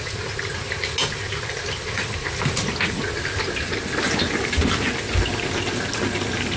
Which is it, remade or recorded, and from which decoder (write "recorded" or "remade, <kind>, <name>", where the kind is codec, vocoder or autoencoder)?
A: recorded